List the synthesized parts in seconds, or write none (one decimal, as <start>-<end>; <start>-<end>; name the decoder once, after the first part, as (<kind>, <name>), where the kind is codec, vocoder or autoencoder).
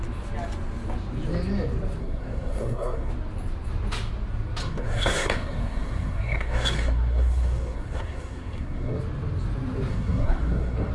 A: 2.0-3.1 (codec, SNAC); 4.6-9.0; 9.9-10.9